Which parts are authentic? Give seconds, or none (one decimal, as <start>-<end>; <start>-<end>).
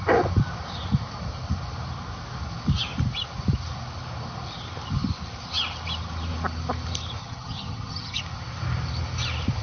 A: 0.0-7.2; 8.2-9.6